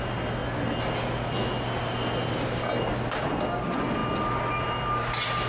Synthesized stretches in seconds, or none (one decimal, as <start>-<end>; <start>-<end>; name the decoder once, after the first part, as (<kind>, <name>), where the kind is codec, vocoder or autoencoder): none